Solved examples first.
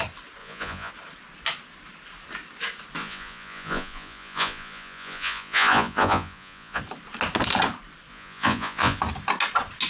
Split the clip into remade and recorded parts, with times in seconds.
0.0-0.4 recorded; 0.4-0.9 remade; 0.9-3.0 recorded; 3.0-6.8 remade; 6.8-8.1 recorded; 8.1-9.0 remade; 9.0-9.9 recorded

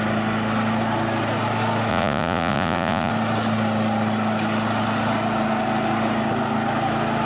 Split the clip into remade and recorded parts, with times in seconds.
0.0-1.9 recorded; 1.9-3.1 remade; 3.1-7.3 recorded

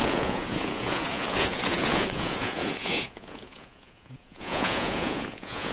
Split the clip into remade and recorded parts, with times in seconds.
0.0-5.7 remade